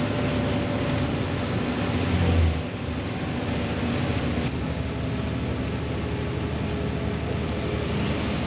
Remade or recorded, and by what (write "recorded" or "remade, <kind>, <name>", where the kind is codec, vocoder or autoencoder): recorded